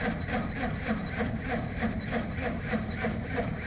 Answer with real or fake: fake